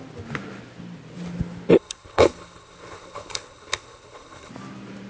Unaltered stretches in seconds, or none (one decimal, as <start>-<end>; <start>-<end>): 0.0-1.7; 4.5-5.1